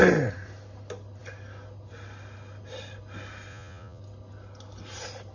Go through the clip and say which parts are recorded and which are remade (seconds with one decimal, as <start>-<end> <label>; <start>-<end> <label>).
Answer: 0.0-3.5 recorded; 3.5-4.0 remade; 4.0-5.3 recorded